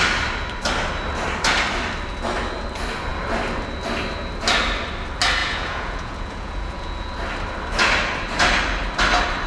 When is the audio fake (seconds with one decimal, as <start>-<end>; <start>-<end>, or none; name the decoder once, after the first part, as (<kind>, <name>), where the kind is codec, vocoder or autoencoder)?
5.4-7.1 (vocoder, Vocos)